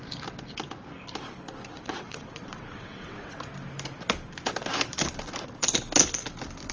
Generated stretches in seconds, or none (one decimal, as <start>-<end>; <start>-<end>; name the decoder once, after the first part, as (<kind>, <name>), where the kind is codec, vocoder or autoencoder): 1.7-3.4 (vocoder, WaveNeXt)